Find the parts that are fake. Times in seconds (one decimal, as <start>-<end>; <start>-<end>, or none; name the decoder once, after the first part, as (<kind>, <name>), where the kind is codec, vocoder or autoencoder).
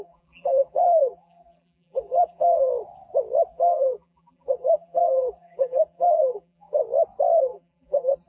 0.0-2.7 (vocoder, BigVGAN v2); 3.5-6.8; 7.4-8.3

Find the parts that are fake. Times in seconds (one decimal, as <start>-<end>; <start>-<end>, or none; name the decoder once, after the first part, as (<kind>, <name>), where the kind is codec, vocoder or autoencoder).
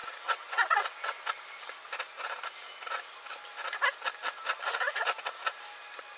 0.0-1.2 (vocoder, WaveNeXt)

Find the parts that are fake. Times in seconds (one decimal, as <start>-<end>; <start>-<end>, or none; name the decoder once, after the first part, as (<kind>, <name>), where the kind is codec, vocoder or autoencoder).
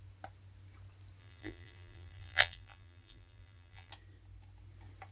1.2-3.9 (vocoder, BigVGAN v2)